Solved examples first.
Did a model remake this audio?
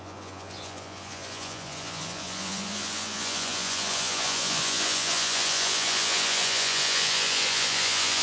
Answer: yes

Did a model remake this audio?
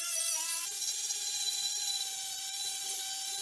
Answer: yes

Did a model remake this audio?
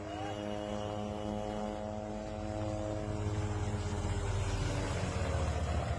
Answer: no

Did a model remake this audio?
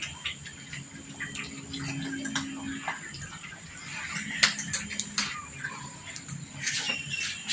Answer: no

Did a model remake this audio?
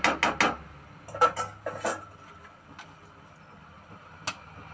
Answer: no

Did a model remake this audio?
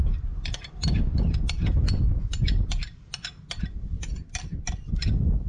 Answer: no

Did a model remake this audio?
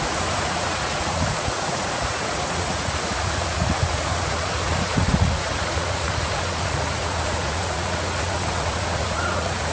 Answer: yes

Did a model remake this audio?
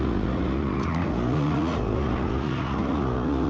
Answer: yes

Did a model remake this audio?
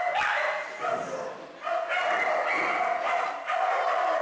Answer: no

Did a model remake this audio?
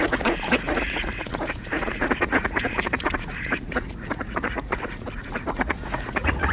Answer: yes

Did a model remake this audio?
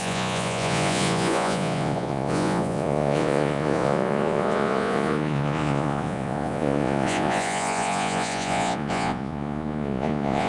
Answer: yes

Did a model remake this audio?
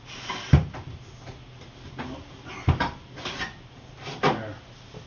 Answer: no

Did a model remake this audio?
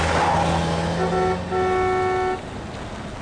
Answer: no